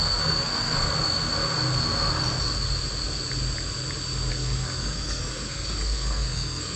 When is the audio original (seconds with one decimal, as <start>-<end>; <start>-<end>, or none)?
0.9-4.3